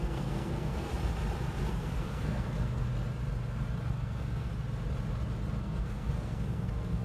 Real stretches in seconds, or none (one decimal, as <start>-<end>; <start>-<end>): 0.9-1.7; 2.9-3.9; 4.5-5.6